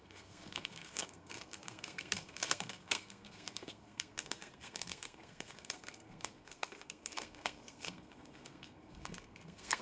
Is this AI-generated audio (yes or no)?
yes